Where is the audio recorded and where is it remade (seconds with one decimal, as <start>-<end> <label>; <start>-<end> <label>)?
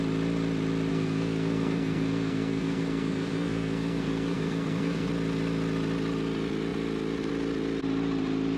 0.0-0.9 recorded; 0.9-5.1 remade; 5.1-8.6 recorded